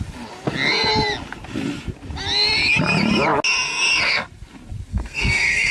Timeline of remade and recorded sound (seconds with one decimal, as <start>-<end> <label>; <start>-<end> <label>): 0.0-4.9 recorded; 4.9-5.7 remade

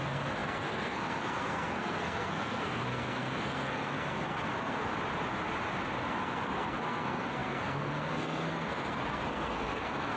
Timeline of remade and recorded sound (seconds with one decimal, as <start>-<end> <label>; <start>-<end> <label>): 0.0-4.9 remade; 4.9-6.1 recorded; 6.1-10.2 remade

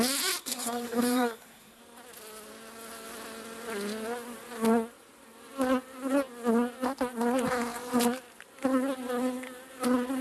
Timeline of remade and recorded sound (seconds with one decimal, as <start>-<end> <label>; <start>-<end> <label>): 0.0-0.4 recorded; 0.4-1.8 remade; 1.8-10.2 recorded

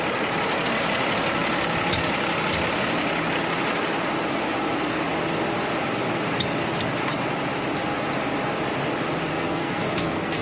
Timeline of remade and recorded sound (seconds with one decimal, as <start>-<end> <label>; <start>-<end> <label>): 0.0-9.3 recorded; 9.3-10.4 remade